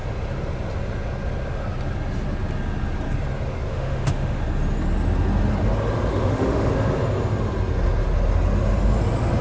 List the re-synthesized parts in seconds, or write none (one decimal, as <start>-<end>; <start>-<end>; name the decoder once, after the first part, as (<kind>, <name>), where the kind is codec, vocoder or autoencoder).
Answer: 3.7-4.4 (autoencoder, DAC-VAE); 6.1-6.7